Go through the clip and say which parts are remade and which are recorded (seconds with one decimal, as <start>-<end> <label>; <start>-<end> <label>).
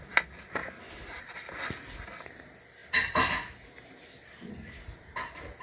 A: 0.0-5.6 recorded